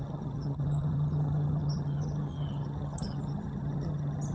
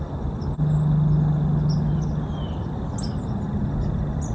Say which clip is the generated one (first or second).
first